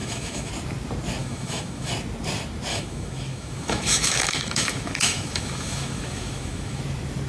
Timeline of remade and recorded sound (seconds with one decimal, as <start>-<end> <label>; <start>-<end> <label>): 0.0-0.5 remade; 0.5-1.2 recorded; 1.2-1.9 remade; 1.9-2.7 recorded; 2.7-6.8 remade; 6.8-7.3 recorded